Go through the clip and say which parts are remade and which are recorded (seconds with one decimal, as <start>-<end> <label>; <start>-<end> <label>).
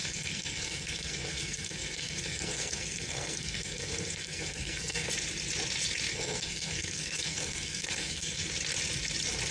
0.0-5.1 remade; 5.1-6.1 recorded; 6.1-8.5 remade; 8.5-9.5 recorded